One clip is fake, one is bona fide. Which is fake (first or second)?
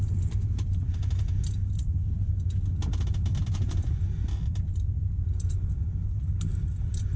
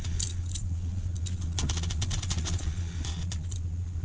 second